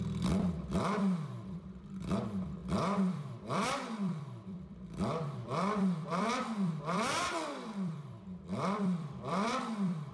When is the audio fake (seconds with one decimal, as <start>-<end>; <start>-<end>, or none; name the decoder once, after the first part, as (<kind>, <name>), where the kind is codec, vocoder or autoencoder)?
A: 0.0-10.1 (vocoder, BigVGAN v2)